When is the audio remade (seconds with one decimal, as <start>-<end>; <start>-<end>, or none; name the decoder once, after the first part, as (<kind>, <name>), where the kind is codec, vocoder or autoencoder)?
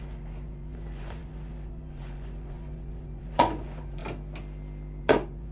0.0-4.0 (vocoder, Vocos); 5.0-5.5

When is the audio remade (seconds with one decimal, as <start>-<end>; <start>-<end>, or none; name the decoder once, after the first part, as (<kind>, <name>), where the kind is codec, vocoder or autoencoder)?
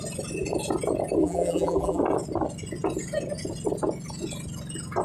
1.2-2.0 (vocoder, BigVGAN v2)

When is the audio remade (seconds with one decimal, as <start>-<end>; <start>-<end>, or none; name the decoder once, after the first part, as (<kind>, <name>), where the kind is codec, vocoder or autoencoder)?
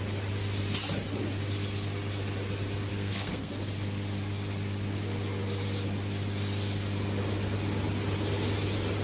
2.9-3.5 (codec, SNAC)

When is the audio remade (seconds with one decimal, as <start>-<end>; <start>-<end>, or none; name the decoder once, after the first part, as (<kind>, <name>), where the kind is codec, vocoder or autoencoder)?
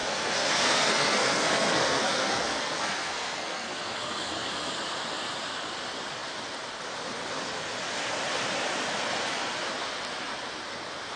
0.0-4.7 (codec, SNAC)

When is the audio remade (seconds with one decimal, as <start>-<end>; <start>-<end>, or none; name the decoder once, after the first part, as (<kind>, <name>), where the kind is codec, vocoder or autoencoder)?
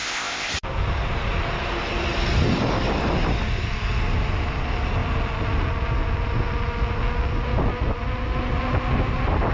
0.0-0.5 (codec, ZipCodec)